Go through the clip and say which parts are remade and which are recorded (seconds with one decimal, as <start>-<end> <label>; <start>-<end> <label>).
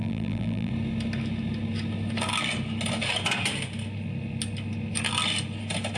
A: 0.0-0.7 remade; 0.7-6.0 recorded